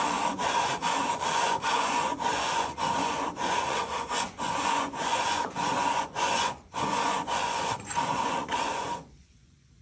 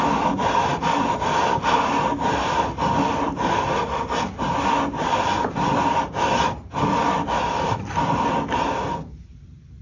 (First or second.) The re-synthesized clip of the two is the first